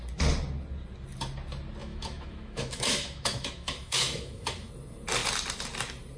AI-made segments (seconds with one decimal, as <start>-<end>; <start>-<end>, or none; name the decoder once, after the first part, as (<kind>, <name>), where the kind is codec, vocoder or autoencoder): 1.8-4.7 (autoencoder, DAC-VAE)

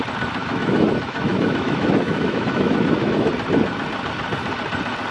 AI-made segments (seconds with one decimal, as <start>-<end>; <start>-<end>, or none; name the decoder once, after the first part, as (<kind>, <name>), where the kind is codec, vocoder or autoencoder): 0.4-3.3 (autoencoder, DAC-VAE)

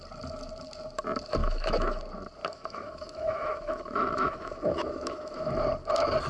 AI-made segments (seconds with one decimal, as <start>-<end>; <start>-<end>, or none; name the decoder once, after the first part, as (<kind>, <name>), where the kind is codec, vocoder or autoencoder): 1.4-2.0 (autoencoder, DAC-VAE); 2.4-5.5

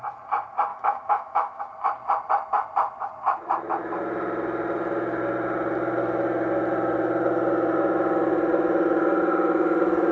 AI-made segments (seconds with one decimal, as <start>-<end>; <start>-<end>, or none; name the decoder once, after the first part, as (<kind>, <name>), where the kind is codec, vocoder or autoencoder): 0.7-1.6 (autoencoder, DAC-VAE)